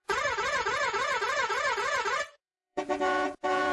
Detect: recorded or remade remade